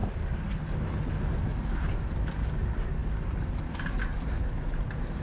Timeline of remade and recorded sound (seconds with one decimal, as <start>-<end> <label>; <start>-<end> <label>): 0.0-1.1 remade; 1.1-5.2 recorded